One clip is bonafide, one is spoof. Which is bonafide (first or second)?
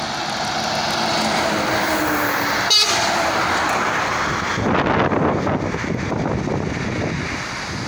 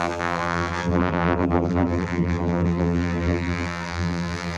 first